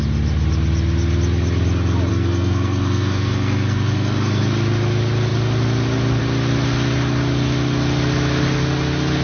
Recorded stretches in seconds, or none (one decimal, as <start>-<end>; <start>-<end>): 0.0-2.1; 4.5-9.2